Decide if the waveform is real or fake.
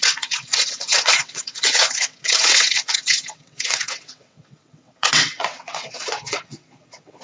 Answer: fake